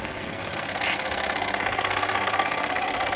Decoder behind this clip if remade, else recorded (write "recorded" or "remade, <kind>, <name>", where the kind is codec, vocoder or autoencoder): remade, codec, SNAC